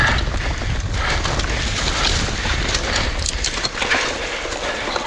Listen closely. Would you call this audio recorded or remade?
recorded